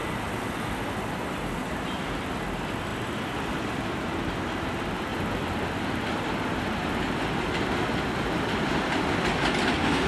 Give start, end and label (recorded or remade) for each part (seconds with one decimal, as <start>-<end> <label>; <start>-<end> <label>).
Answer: 0.0-10.1 recorded